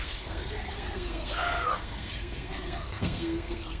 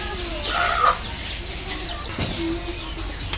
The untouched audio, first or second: second